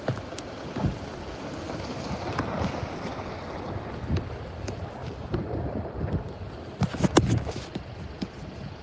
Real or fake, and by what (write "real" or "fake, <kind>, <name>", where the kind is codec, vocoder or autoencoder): real